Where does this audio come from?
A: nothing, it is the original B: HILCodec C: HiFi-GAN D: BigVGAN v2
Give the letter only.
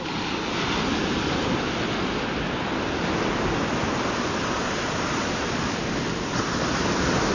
A